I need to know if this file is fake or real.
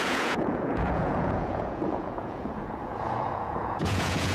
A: fake